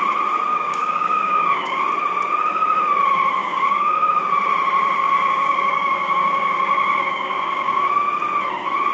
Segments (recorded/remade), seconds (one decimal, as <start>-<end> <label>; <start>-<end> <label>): 0.0-0.5 recorded; 0.5-1.8 remade; 1.8-3.4 recorded; 3.4-4.1 remade; 4.1-5.0 recorded; 5.0-7.9 remade; 7.9-8.9 recorded